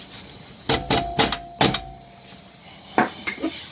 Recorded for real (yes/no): yes